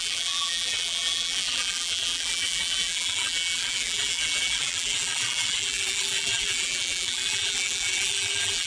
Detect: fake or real fake